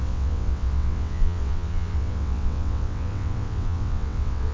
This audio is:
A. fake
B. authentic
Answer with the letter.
A